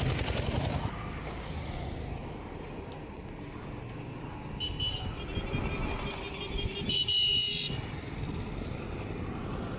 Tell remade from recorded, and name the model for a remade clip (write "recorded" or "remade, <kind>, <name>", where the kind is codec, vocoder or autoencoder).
recorded